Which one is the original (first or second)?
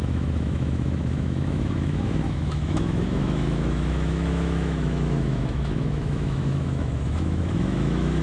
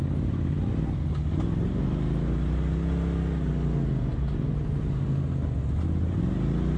second